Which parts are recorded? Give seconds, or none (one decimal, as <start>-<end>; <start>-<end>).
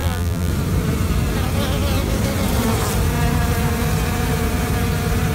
0.5-5.3